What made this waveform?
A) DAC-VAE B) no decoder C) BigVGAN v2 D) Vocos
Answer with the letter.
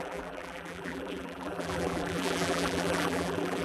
C